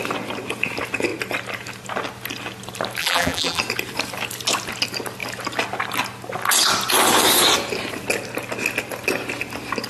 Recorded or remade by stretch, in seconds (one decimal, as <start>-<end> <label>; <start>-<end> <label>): 0.0-3.0 recorded; 3.0-3.6 remade; 3.6-9.9 recorded